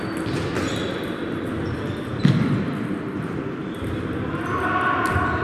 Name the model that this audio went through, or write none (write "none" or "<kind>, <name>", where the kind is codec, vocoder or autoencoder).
none